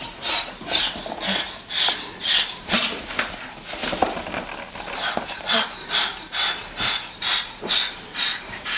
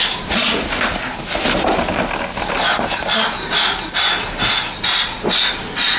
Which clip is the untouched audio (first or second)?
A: second